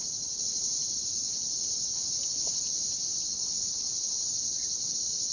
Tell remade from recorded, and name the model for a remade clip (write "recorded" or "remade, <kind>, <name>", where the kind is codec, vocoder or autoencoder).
recorded